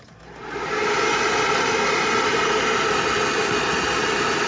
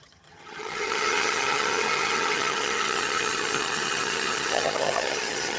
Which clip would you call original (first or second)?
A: first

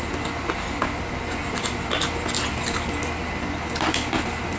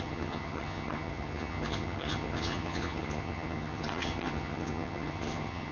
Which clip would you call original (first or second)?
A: first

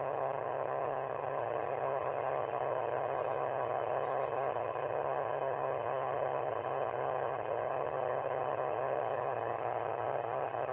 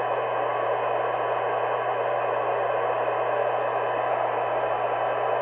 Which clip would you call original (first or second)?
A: second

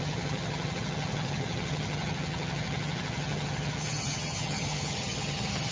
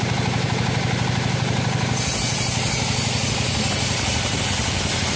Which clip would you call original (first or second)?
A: second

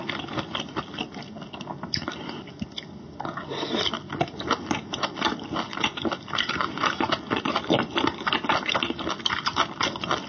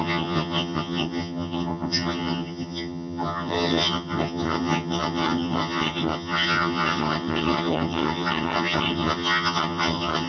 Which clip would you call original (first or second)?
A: first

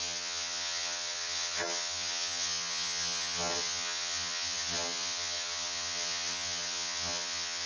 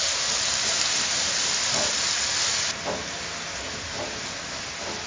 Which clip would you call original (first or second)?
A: second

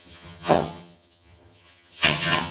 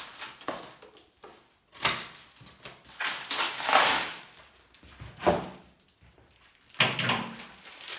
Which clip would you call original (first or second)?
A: second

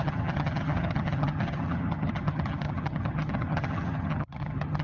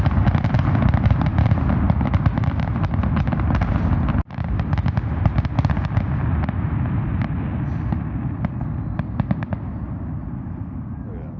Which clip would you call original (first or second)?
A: second